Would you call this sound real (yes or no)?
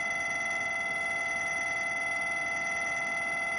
yes